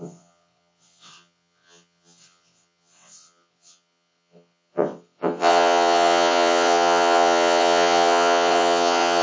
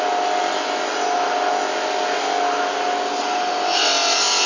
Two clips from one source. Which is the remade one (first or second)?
first